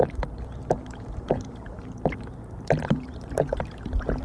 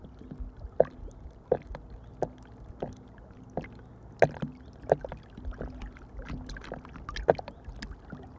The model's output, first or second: first